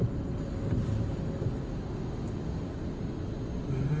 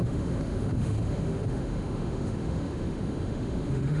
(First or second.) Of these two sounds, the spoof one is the second